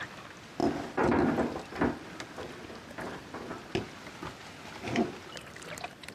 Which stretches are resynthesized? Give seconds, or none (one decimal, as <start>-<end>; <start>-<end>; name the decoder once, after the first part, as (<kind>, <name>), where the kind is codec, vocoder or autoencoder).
none